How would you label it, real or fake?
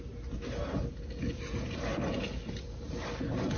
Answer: real